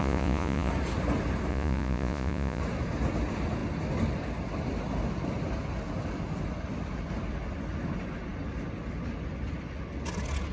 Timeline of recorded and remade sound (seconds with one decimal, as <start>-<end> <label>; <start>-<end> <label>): 0.0-0.7 remade; 0.7-1.5 recorded; 1.5-2.6 remade; 2.6-10.5 recorded